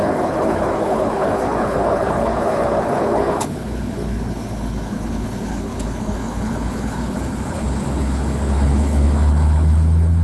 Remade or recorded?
remade